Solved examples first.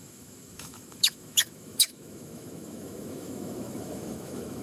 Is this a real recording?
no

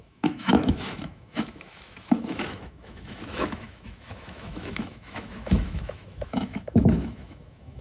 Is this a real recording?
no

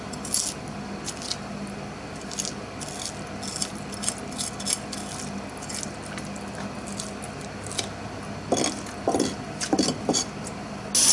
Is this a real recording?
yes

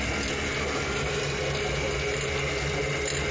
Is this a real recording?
yes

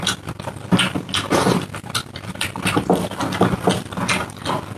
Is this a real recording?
yes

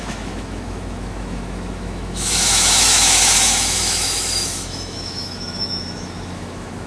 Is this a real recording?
no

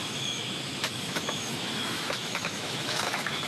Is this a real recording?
no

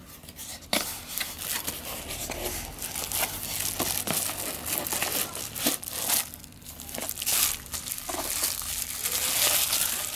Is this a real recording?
yes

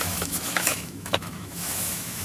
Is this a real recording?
no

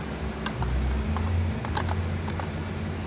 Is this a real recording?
yes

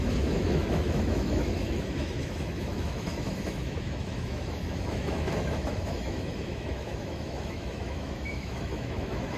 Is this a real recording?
no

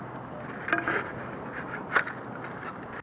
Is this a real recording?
yes